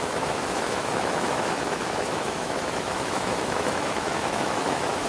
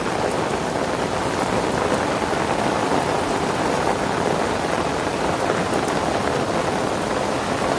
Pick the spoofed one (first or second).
first